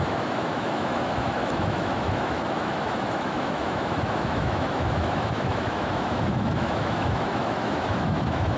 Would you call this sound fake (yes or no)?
yes